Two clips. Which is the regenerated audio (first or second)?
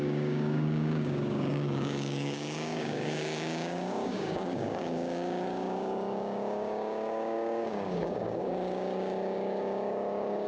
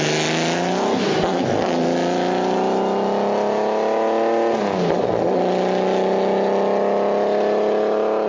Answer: first